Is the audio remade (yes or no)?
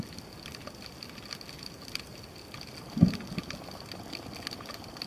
no